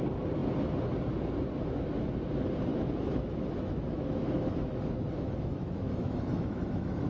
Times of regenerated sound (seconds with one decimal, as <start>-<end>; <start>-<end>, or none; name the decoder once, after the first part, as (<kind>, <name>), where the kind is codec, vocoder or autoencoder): 2.7-7.1 (autoencoder, DAC-VAE)